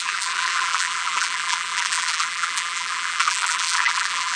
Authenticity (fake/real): fake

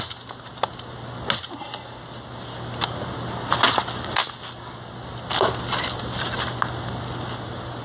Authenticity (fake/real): real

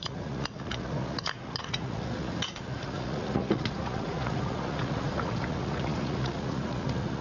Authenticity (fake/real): fake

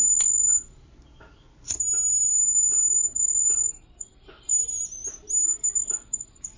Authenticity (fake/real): real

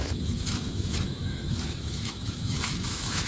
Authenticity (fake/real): fake